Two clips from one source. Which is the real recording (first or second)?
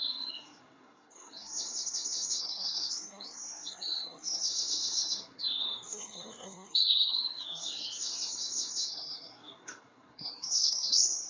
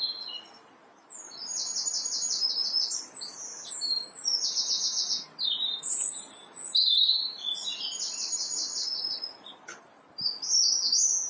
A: second